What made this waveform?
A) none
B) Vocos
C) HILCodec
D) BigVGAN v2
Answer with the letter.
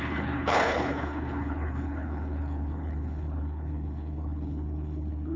C